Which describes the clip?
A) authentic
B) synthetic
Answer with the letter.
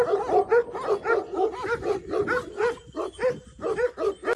A